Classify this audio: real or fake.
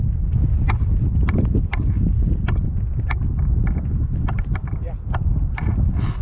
real